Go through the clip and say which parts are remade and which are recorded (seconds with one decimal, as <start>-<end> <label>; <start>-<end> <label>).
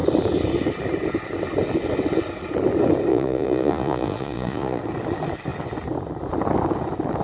0.0-3.1 recorded; 3.1-4.8 remade; 4.8-7.2 recorded